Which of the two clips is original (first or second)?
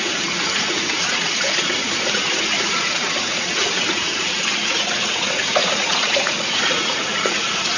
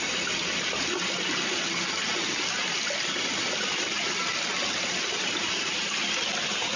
second